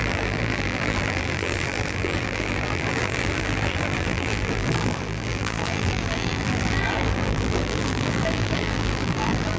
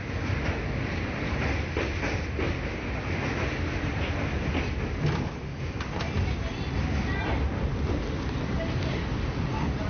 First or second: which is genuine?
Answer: second